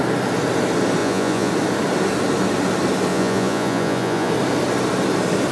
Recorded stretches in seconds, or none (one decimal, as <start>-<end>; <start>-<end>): 0.0-1.0; 1.5-3.1; 4.3-5.5